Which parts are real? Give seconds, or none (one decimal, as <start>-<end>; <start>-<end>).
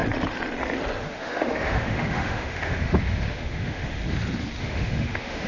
0.0-1.0; 4.0-4.6